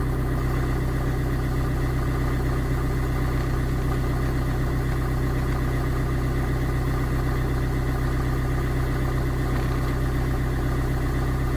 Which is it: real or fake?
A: real